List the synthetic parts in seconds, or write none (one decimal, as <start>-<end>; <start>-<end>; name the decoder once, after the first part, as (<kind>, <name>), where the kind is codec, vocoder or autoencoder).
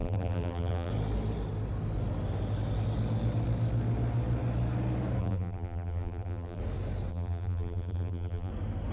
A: 0.0-0.9 (vocoder, BigVGAN v2); 5.2-6.6; 7.1-8.5